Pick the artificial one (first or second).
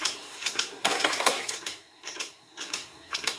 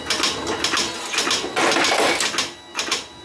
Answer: first